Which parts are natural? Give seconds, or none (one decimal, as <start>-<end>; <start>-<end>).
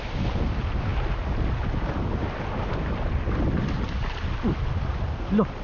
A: 0.0-5.6